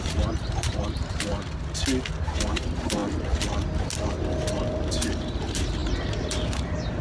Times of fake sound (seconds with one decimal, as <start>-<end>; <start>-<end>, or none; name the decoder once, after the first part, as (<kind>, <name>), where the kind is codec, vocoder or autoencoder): 0.0-1.3 (vocoder, BigVGAN v2); 2.2-3.0; 4.5-7.0